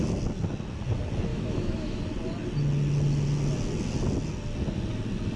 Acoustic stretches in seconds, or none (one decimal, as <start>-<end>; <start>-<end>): 0.0-1.3; 2.0-5.4